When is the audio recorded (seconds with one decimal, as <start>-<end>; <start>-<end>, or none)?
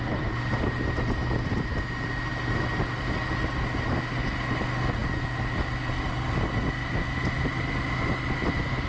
0.0-8.9